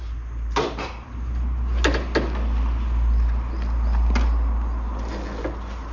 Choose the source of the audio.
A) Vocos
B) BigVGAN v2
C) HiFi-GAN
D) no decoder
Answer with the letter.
D